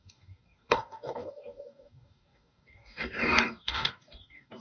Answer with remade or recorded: remade